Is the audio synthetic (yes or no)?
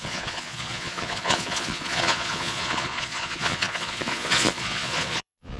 yes